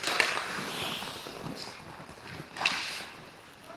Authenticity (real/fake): real